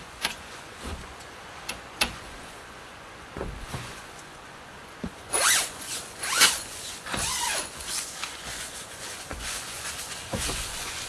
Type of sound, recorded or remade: remade